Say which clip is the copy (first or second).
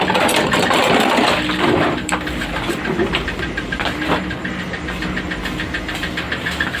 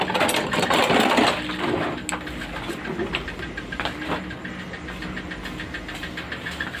first